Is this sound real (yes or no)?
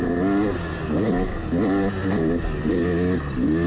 yes